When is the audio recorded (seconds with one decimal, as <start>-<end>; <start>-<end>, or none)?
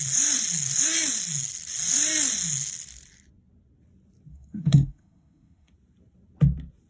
0.0-4.3; 5.7-6.9